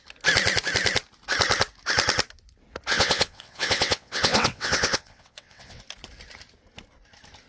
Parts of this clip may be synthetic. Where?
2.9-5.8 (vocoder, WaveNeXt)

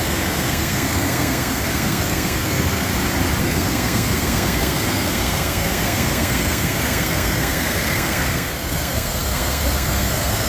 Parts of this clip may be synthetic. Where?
0.0-2.9 (codec, SNAC); 3.4-10.5

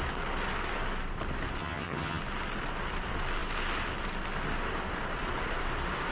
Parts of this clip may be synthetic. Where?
1.6-2.2 (vocoder, HiFi-GAN)

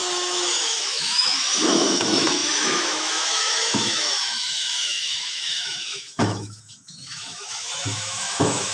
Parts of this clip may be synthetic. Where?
0.0-8.7 (autoencoder, DAC-VAE)

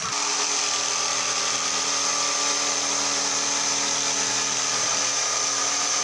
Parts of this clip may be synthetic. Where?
none

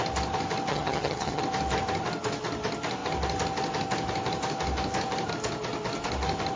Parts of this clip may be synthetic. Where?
0.7-1.4 (vocoder, HiFi-GAN)

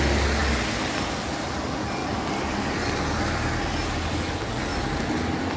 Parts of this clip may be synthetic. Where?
none

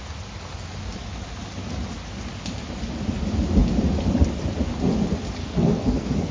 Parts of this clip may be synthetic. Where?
5.4-6.3 (codec, SNAC)